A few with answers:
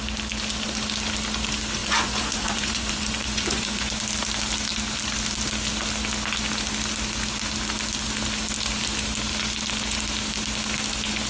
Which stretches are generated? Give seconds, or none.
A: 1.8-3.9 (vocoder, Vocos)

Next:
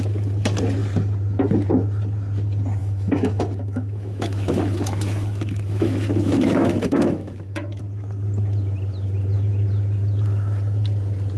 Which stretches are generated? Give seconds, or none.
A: 2.8-7.8 (autoencoder, DAC-VAE)

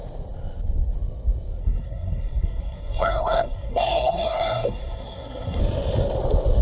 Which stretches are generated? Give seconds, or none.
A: 1.6-5.6 (codec, SNAC)

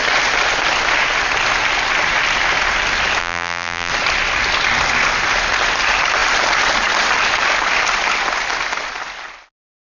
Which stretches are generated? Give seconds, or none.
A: 3.2-3.9 (vocoder, BigVGAN v2)

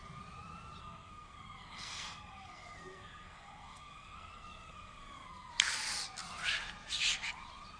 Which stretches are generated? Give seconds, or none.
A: 0.8-5.5 (codec, SNAC)